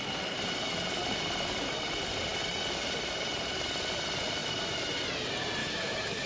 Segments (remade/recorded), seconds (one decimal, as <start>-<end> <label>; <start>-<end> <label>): 0.0-5.6 recorded; 5.6-6.3 remade